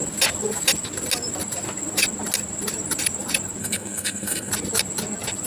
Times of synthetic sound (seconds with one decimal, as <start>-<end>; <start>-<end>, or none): 3.6-4.5